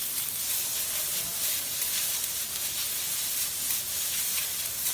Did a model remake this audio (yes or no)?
no